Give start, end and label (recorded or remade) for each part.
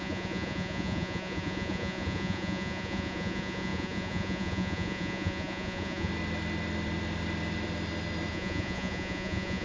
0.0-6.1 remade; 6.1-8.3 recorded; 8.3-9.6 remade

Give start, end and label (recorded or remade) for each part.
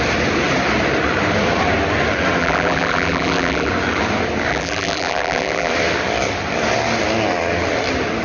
0.0-2.4 recorded; 2.4-3.7 remade; 3.7-4.5 recorded; 4.5-5.7 remade; 5.7-8.2 recorded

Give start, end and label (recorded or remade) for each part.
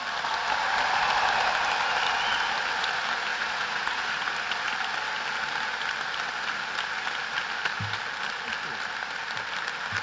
0.0-3.3 recorded; 3.3-4.3 remade; 4.3-10.0 recorded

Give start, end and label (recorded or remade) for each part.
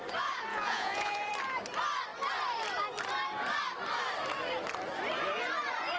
0.0-0.5 recorded; 0.5-1.3 remade; 1.3-6.0 recorded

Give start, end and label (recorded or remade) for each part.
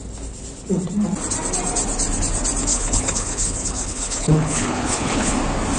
0.0-2.7 recorded; 2.7-5.3 remade; 5.3-5.8 recorded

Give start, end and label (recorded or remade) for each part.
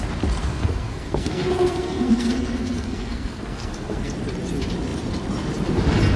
0.0-0.4 recorded; 0.4-4.1 remade; 4.1-6.2 recorded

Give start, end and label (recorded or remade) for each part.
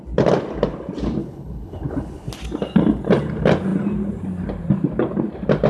0.0-1.2 recorded; 1.2-2.3 remade; 2.3-5.7 recorded